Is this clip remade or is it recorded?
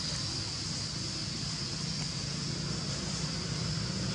recorded